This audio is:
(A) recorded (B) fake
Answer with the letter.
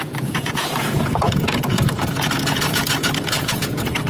B